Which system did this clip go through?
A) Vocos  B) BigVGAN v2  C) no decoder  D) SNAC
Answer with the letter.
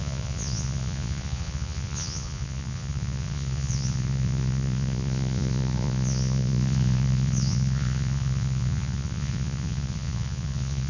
A